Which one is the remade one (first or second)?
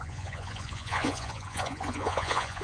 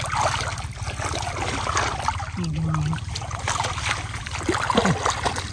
first